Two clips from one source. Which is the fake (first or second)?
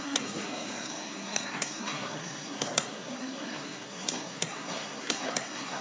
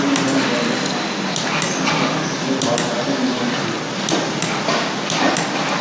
first